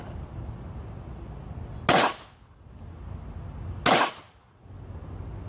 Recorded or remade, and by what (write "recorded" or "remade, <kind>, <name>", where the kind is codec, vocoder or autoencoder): recorded